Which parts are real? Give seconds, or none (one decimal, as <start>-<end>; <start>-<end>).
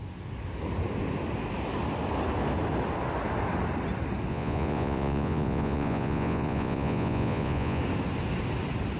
0.0-4.3; 7.8-9.0